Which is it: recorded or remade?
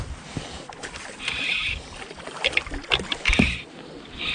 remade